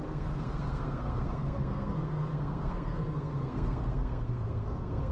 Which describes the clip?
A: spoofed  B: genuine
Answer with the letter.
A